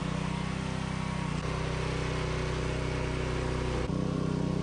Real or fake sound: real